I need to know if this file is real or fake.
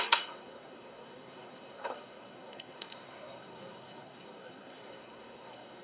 fake